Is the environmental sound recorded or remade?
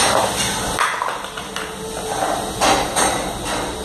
recorded